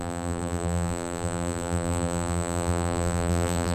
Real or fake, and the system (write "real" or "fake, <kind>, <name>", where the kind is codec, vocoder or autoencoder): fake, vocoder, BigVGAN v2